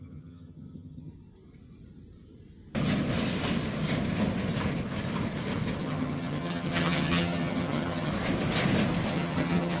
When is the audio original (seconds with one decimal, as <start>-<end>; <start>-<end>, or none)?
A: 1.1-5.8; 8.1-9.1